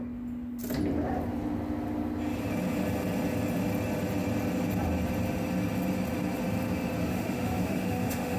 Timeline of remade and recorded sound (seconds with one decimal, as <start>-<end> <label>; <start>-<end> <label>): 0.0-7.0 recorded; 7.0-8.4 remade